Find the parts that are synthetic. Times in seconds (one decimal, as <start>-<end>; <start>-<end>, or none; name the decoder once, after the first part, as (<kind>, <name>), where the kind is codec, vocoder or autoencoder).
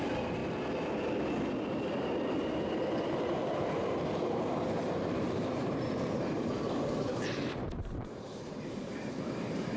0.0-0.4 (vocoder, BigVGAN v2); 3.0-9.8